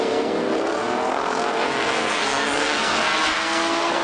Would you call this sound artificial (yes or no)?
yes